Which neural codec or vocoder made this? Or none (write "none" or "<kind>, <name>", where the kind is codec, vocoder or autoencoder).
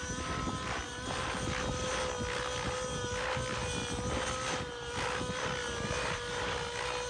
none